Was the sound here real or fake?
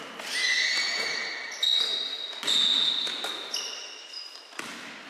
real